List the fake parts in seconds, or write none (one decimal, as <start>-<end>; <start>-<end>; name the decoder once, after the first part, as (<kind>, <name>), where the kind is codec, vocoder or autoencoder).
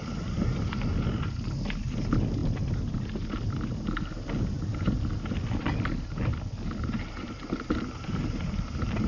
none